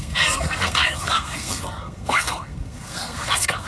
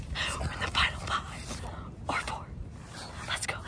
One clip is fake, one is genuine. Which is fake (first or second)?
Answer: first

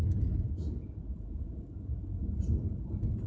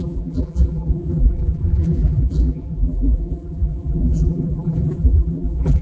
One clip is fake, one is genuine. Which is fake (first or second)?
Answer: second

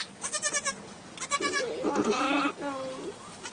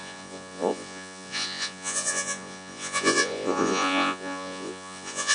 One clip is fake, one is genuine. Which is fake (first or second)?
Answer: second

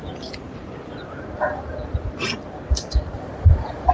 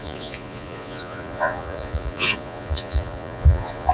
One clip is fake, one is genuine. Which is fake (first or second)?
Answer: second